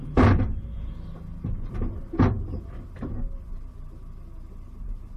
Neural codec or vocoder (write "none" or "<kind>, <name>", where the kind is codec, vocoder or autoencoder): none